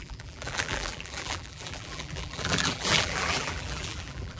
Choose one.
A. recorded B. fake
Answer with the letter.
B